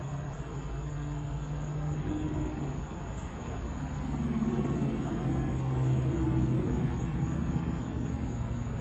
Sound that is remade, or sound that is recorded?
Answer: remade